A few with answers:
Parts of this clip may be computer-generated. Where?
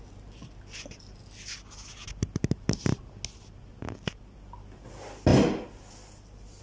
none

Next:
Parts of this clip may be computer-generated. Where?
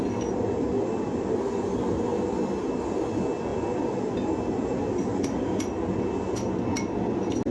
none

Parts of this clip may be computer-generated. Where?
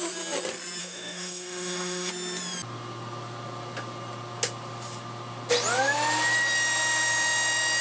0.8-2.1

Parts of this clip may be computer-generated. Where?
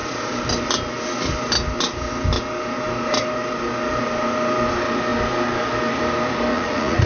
6.5-7.1